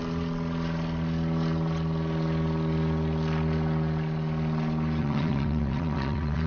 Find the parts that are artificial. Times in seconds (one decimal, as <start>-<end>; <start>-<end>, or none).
5.0-6.5